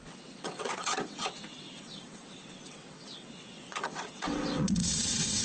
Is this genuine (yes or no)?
no